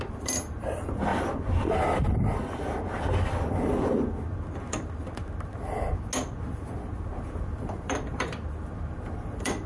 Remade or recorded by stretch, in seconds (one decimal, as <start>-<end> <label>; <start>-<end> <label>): 0.0-1.1 remade; 1.1-4.7 recorded; 4.7-5.2 remade; 5.2-7.1 recorded; 7.1-9.7 remade